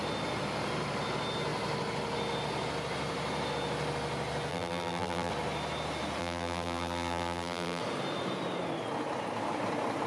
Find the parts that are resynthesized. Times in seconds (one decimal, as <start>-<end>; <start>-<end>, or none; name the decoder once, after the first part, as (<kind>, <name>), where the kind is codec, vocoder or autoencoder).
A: 4.5-5.3 (vocoder, BigVGAN v2); 6.2-7.8

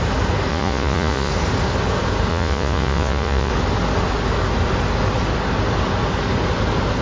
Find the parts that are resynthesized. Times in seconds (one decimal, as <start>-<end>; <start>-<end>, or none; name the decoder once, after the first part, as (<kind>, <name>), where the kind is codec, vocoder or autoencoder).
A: 0.5-1.3 (vocoder, Vocos); 2.3-3.5